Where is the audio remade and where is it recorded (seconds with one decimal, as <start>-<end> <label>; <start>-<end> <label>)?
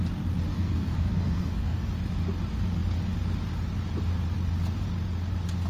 0.0-0.5 recorded; 0.5-1.9 remade; 1.9-5.7 recorded